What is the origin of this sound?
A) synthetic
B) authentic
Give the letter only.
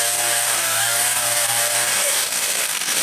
A